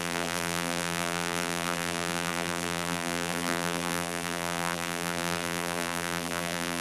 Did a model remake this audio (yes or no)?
yes